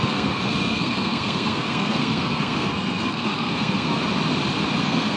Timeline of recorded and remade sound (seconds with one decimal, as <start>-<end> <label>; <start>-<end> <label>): 0.0-4.0 remade; 4.0-4.8 recorded; 4.8-5.2 remade